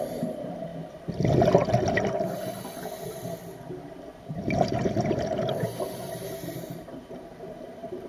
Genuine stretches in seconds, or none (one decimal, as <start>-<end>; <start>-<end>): 0.7-4.3